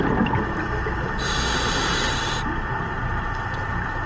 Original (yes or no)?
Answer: yes